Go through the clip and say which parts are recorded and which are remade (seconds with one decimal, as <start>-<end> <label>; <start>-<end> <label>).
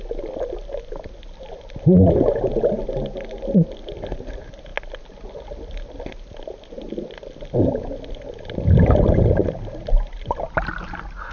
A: 0.0-11.3 recorded